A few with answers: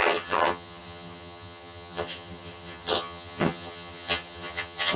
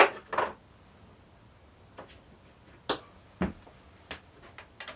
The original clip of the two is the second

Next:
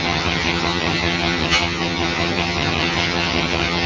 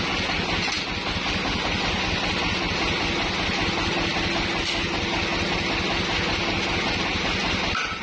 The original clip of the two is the second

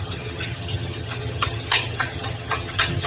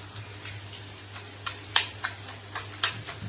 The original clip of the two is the second